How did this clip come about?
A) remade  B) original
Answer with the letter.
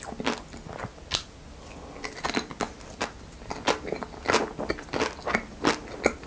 B